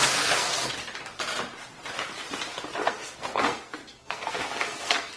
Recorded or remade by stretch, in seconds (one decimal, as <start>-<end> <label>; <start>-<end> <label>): 0.0-0.7 remade; 0.7-2.8 recorded; 2.8-5.2 remade